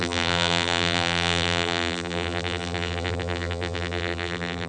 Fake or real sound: fake